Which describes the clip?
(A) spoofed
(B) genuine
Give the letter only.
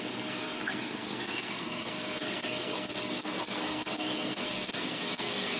A